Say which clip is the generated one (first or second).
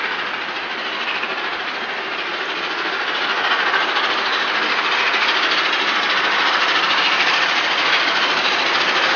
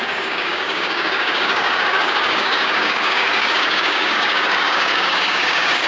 second